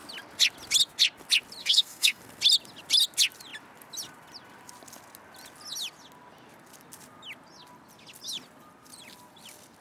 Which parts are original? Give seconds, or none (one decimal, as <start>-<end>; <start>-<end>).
0.0-1.6; 2.2-9.8

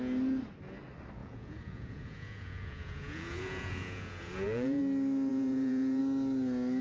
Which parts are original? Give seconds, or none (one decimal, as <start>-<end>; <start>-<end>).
0.0-1.2; 4.8-5.3; 6.0-6.8

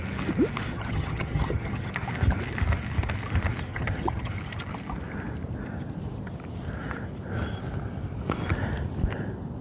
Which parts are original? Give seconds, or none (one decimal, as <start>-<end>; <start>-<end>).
0.0-0.7; 1.9-3.7; 4.3-9.6

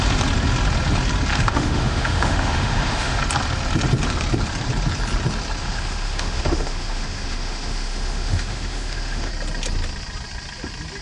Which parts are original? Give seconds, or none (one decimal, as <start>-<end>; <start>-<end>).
0.0-1.3; 3.2-5.6; 9.3-11.0

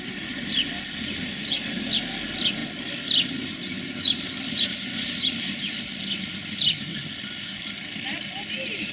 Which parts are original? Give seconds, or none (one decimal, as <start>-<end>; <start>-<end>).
0.0-8.9

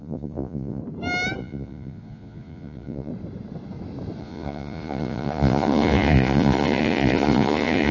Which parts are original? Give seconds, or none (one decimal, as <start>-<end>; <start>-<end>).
0.8-1.4; 3.1-4.2